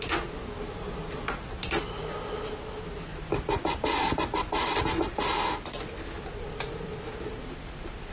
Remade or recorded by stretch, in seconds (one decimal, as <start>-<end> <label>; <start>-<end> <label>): 0.0-3.1 recorded; 3.1-3.6 remade; 3.6-7.1 recorded; 7.1-8.1 remade